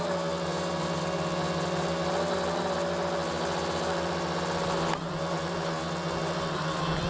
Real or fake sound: real